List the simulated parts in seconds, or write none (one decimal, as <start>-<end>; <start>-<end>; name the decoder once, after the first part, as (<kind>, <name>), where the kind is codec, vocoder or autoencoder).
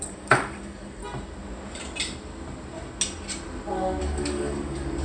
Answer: 0.0-1.0 (codec, DAC); 4.0-5.0